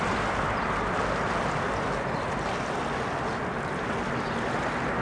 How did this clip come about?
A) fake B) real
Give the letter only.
B